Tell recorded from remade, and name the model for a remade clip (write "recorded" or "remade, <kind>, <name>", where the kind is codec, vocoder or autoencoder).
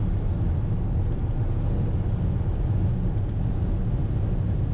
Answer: recorded